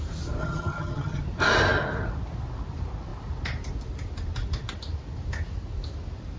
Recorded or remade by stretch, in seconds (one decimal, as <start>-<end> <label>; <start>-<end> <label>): 0.0-0.4 recorded; 0.4-1.2 remade; 1.2-6.4 recorded